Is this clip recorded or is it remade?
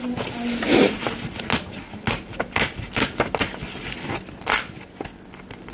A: recorded